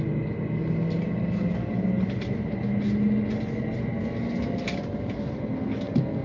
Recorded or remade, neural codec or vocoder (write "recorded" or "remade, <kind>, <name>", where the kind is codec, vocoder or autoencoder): recorded